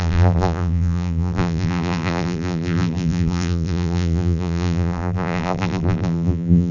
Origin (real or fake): fake